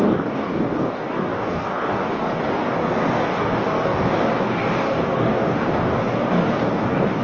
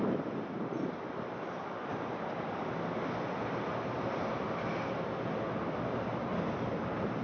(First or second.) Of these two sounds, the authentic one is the second